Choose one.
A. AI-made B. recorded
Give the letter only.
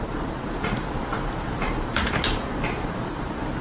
A